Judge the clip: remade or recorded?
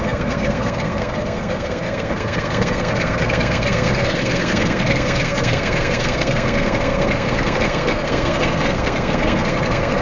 remade